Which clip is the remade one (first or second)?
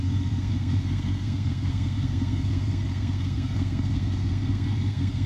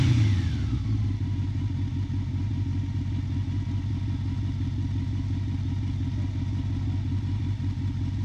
first